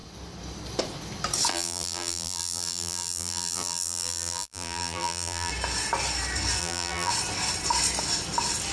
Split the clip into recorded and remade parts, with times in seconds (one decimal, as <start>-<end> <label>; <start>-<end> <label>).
0.0-1.5 recorded; 1.5-5.5 remade; 5.5-6.6 recorded; 6.6-7.1 remade; 7.1-8.7 recorded